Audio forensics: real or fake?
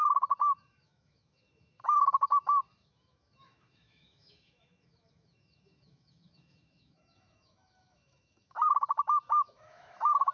fake